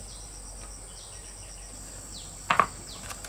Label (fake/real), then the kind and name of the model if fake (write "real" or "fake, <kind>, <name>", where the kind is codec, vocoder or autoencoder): real